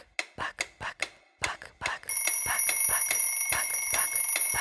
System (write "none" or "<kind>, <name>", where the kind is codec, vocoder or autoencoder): none